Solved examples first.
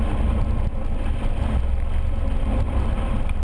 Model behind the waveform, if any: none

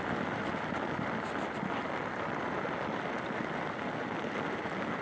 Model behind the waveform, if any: none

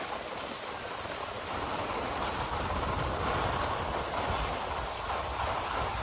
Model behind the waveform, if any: none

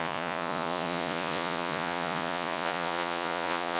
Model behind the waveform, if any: vocoder, Vocos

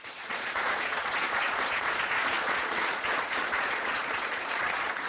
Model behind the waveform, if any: vocoder, Vocos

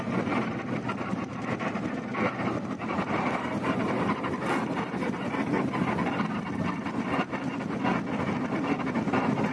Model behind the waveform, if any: none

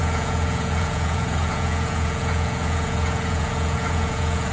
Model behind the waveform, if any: vocoder, Vocos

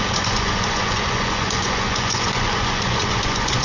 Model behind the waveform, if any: vocoder, Vocos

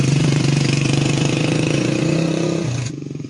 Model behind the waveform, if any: vocoder, Vocos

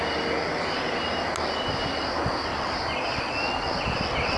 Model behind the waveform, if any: none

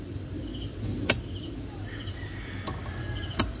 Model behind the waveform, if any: none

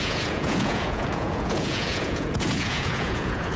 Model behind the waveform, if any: vocoder, Vocos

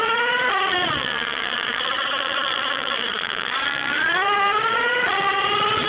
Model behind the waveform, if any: vocoder, Vocos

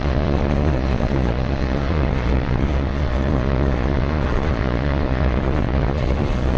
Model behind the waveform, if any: vocoder, Vocos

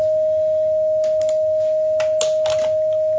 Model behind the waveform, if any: none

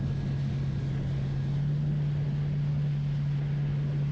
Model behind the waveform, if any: none